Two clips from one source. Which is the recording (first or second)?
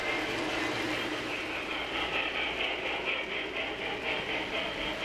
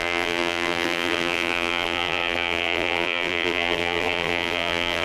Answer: first